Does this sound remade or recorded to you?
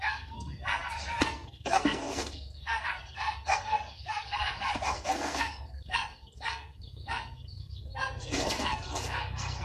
remade